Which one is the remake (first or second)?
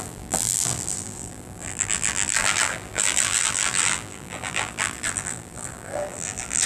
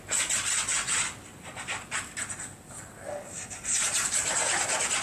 first